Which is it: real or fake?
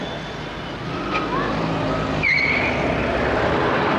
real